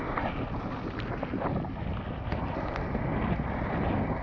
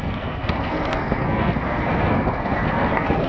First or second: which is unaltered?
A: first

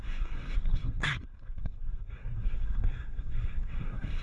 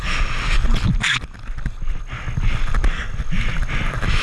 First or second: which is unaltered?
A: second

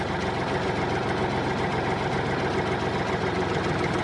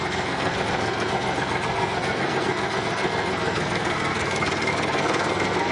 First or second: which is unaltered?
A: first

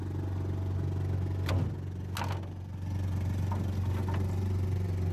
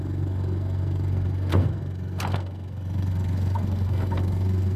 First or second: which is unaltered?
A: first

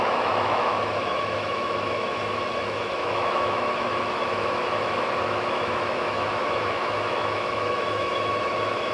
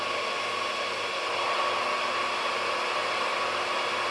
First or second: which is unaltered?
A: second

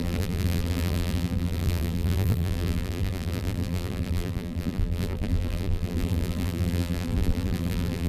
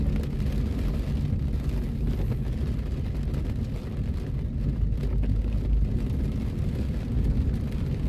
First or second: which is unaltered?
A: second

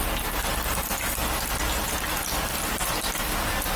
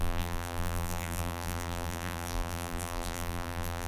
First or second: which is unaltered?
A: first